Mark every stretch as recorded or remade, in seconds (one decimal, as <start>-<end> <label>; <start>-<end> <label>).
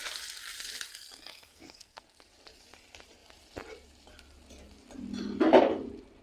0.0-1.3 recorded; 1.3-2.2 remade; 2.2-6.2 recorded